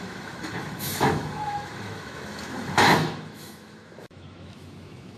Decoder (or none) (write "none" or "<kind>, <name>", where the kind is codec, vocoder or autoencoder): autoencoder, DAC-VAE